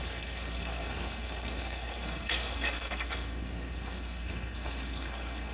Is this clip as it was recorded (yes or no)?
no